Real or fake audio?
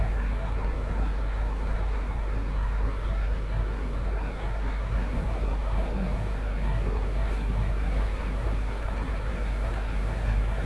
fake